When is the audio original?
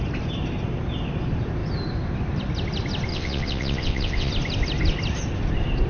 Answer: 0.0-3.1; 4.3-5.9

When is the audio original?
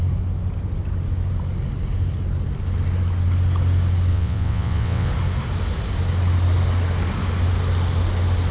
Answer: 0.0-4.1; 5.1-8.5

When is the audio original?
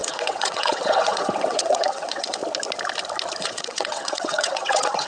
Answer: 2.4-3.4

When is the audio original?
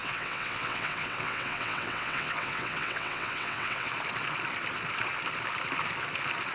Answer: 3.9-6.5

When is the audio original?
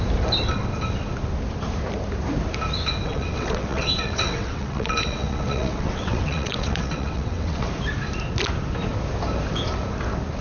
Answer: 0.0-3.0; 7.7-10.4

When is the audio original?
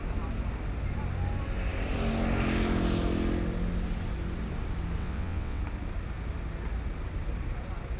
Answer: 0.0-5.0; 5.6-8.0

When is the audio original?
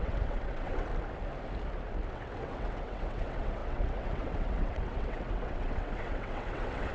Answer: 0.9-2.1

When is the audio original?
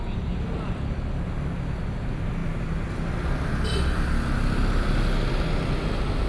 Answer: 0.0-6.3